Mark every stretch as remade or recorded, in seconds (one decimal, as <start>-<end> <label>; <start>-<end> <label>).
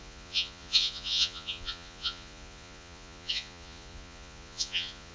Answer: 0.0-5.1 remade